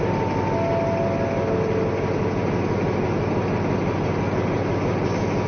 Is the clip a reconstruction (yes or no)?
no